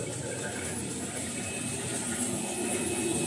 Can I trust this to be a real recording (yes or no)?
yes